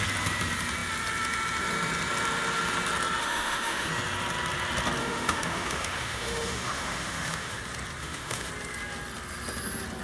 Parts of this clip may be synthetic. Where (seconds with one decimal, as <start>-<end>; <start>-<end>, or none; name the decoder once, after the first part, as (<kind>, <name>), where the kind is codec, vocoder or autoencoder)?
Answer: 3.2-3.9 (autoencoder, DAC-VAE); 5.0-7.6; 8.0-8.5